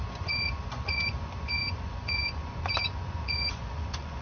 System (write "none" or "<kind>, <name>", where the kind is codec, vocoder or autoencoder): vocoder, Vocos